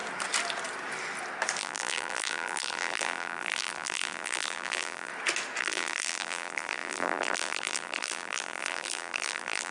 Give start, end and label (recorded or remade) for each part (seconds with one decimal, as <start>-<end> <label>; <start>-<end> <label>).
0.0-1.6 recorded; 1.6-5.1 remade; 5.1-5.6 recorded; 5.6-9.7 remade